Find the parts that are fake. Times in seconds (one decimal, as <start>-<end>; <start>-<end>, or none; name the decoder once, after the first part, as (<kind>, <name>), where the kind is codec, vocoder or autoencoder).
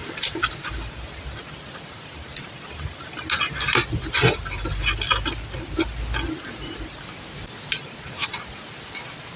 none